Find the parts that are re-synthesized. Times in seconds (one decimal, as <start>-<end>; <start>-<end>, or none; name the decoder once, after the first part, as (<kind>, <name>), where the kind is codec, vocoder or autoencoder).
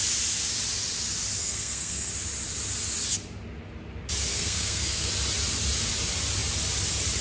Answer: 1.4-2.1 (codec, SNAC); 4.3-5.1